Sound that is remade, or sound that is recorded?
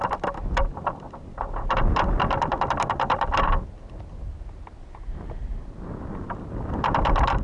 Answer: recorded